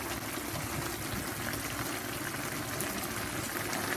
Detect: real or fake real